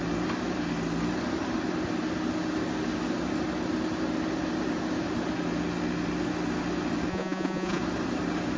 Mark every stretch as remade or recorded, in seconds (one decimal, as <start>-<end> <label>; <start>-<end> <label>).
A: 0.0-7.1 recorded; 7.1-7.8 remade; 7.8-8.6 recorded

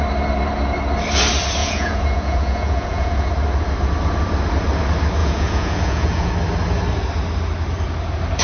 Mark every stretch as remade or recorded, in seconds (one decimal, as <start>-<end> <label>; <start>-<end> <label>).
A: 0.0-1.6 recorded; 1.6-3.3 remade; 3.3-5.2 recorded; 5.2-6.3 remade; 6.3-8.4 recorded